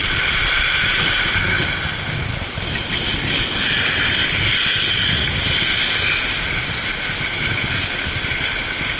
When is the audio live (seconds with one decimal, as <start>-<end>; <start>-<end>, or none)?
0.0-9.0